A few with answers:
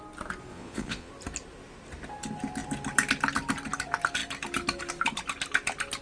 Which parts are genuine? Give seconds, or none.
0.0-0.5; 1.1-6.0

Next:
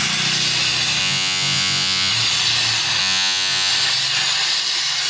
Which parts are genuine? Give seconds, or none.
0.0-1.0; 2.1-3.0; 3.7-5.1

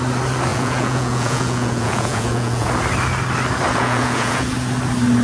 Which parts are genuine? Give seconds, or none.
0.0-0.5; 2.7-3.7; 4.5-5.2

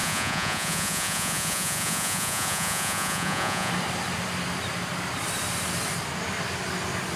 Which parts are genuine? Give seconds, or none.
3.7-7.2